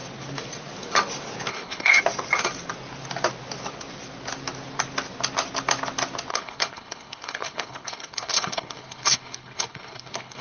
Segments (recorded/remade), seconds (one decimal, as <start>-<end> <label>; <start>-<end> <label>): 0.0-1.5 recorded; 1.5-2.0 remade; 2.0-6.3 recorded; 6.3-10.4 remade